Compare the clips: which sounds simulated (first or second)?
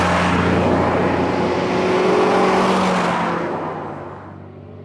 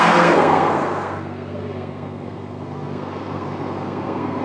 second